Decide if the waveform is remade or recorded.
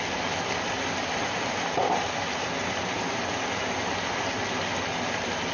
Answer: recorded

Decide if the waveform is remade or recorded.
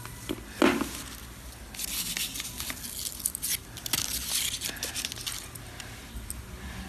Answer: recorded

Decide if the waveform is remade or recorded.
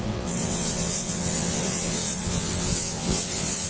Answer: remade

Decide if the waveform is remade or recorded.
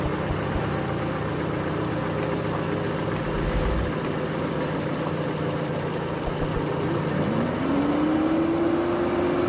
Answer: recorded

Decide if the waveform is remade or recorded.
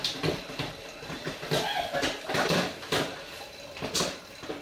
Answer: recorded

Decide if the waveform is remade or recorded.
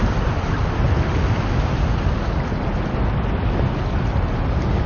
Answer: recorded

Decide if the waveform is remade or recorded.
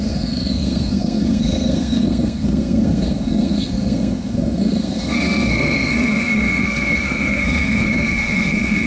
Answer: remade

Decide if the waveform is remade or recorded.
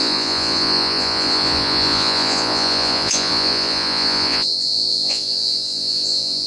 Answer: remade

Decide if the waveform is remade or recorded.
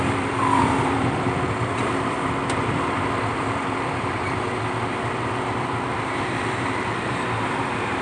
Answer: remade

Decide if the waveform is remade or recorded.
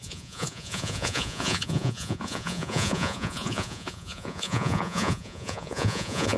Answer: remade